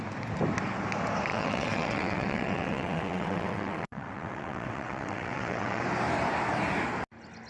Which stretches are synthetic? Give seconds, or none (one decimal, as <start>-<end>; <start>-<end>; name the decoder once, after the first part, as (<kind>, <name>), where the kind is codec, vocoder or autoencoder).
1.3-5.8 (vocoder, WaveNeXt)

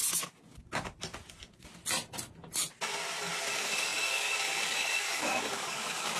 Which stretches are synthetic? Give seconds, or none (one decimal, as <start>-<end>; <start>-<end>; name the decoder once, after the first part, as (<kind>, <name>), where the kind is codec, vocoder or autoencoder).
3.5-6.2 (codec, DAC)

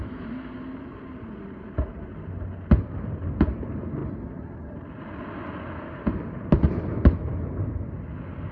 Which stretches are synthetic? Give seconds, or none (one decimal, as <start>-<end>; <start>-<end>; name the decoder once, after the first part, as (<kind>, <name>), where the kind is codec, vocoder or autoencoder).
none

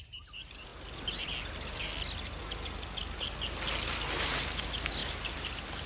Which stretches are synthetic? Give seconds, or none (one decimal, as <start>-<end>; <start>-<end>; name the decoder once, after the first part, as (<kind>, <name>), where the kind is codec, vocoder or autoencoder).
none

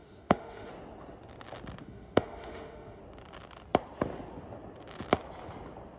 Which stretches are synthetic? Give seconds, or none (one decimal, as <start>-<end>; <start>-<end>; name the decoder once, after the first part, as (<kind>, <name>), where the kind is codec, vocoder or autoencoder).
0.0-0.7 (autoencoder, DAC-VAE); 1.8-3.0